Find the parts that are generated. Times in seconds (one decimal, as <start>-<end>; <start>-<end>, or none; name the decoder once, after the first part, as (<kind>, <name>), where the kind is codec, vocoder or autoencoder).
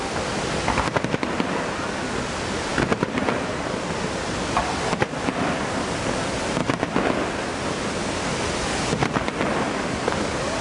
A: none